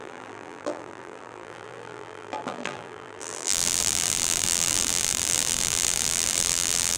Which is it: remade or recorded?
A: remade